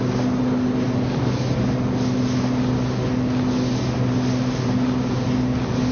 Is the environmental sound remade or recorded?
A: recorded